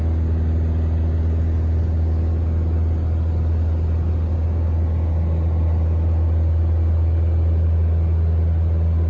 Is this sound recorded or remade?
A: recorded